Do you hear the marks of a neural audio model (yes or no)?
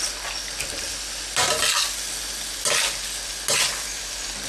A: no